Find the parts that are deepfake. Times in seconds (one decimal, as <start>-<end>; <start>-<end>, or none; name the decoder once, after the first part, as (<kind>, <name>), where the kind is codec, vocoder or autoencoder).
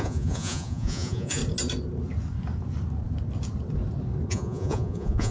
0.0-1.4 (vocoder, Vocos); 4.3-5.3